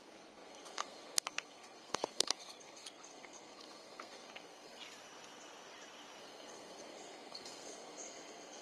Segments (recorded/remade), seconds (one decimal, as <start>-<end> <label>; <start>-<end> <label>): 0.0-4.8 remade; 4.8-6.2 recorded; 6.2-8.6 remade